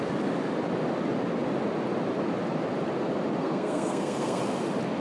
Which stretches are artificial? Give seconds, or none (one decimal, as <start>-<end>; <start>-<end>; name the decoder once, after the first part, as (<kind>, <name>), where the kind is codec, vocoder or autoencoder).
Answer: 3.4-4.4 (codec, SNAC)

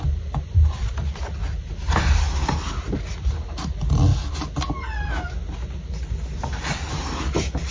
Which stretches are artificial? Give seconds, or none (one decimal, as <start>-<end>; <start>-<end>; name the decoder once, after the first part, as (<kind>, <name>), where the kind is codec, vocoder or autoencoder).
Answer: none

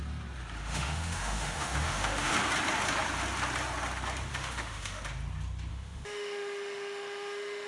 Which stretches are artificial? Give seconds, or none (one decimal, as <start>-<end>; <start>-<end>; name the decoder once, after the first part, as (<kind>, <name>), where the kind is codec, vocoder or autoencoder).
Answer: 0.6-2.3 (autoencoder, DAC-VAE); 4.3-5.0; 5.7-7.7

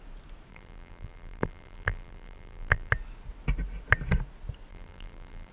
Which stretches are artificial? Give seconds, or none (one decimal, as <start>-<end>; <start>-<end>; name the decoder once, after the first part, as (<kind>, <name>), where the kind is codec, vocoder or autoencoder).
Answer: 0.5-2.9 (vocoder, BigVGAN v2); 4.7-5.5

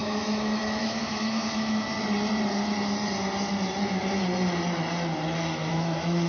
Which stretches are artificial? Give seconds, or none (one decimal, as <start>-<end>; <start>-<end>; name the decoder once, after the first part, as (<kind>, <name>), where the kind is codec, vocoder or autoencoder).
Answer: 0.0-1.9 (autoencoder, DAC-VAE); 5.7-6.3

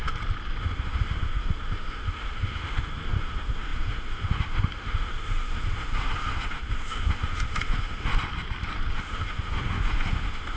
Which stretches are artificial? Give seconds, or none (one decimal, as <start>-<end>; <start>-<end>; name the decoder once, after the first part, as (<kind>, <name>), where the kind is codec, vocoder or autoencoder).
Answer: 0.6-8.1 (autoencoder, DAC-VAE); 9.0-10.6

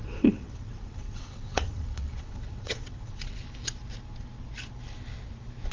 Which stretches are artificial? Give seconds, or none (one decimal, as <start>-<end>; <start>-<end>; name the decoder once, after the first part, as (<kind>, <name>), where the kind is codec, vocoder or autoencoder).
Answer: 0.0-3.4 (vocoder, WaveNeXt)